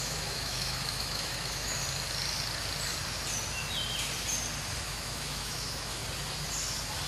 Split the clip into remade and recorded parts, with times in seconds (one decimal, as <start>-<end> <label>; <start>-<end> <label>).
0.0-1.8 remade; 1.8-4.8 recorded; 4.8-6.0 remade; 6.0-7.1 recorded